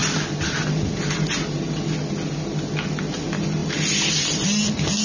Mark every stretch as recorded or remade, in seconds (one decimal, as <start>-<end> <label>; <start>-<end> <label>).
0.0-5.0 recorded